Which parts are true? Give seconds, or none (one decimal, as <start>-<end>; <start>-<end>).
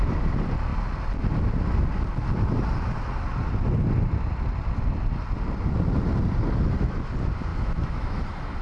0.0-7.5; 8.2-8.6